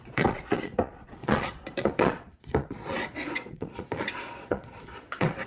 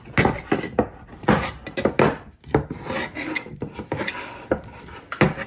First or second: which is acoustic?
second